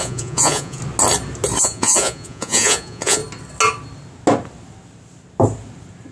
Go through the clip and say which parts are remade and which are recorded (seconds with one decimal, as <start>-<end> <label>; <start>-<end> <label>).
0.0-0.8 remade; 0.8-1.6 recorded; 1.6-3.2 remade; 3.2-6.1 recorded

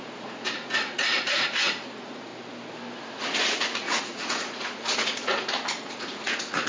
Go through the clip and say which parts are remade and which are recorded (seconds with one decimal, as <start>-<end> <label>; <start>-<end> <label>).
0.0-2.3 remade; 2.3-3.0 recorded; 3.0-6.7 remade

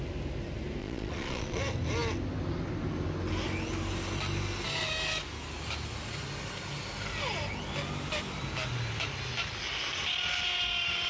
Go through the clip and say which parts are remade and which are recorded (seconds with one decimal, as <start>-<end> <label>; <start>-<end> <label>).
0.0-0.8 recorded; 0.8-1.6 remade; 1.6-11.1 recorded

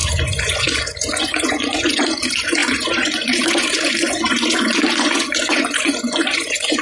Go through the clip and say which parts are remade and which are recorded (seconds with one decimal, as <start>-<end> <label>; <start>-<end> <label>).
0.0-6.8 remade